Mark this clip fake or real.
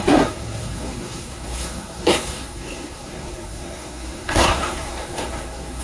fake